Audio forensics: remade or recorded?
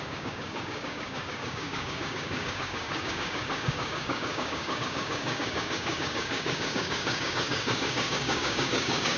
remade